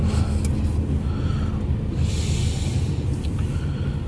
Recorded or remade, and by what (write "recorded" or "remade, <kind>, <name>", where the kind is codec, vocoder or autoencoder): recorded